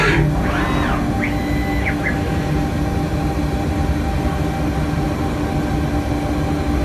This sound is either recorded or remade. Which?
recorded